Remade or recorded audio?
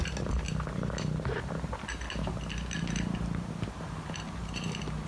recorded